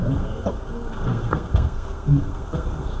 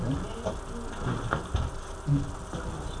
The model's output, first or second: first